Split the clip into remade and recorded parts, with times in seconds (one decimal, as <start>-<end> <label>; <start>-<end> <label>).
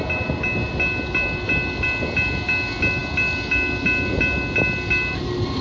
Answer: 0.0-5.6 recorded